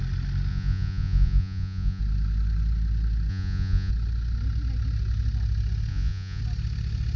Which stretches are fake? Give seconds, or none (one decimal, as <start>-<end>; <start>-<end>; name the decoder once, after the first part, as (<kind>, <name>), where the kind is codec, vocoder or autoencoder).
0.5-2.0 (vocoder, Vocos); 3.3-3.9; 5.9-6.4